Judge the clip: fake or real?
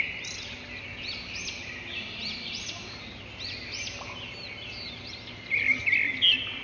real